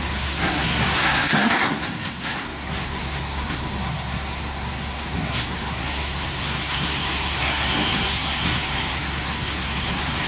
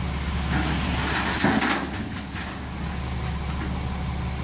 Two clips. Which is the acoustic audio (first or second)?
second